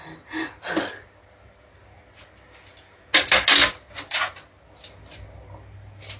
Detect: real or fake real